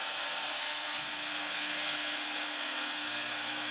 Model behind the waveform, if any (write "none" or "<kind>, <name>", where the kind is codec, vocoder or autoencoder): codec, SNAC